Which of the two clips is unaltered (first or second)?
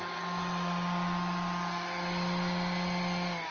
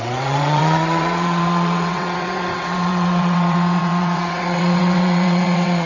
first